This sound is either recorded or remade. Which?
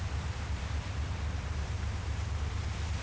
recorded